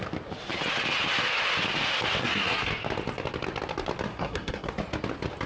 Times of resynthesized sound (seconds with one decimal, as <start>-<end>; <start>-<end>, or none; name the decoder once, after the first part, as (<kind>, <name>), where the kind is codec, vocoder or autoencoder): 2.2-2.7 (codec, SNAC); 4.1-4.7